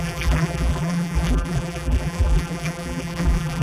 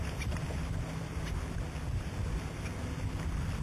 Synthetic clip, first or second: first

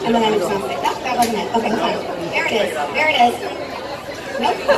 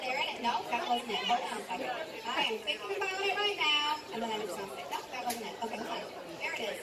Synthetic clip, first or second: second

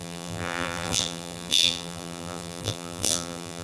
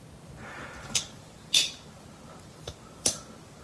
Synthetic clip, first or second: first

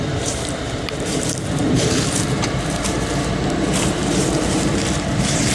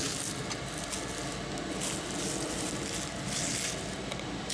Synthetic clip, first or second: first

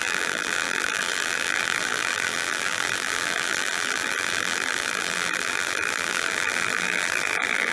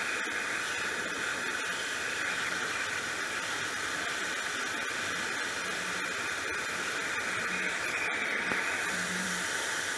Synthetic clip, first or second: first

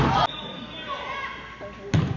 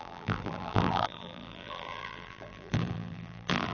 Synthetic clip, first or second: second